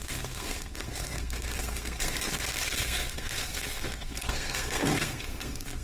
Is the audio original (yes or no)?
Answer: no